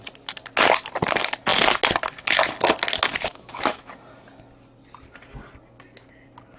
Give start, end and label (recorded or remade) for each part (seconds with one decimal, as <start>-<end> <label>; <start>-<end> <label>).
0.0-3.3 recorded; 3.3-3.9 remade; 3.9-6.6 recorded